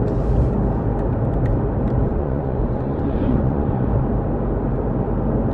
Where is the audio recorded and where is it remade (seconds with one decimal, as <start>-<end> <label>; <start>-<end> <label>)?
0.0-2.1 recorded; 2.1-4.0 remade; 4.0-5.5 recorded